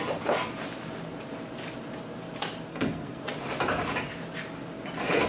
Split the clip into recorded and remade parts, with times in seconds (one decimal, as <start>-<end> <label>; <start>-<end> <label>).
0.0-2.7 recorded; 2.7-3.2 remade; 3.2-5.3 recorded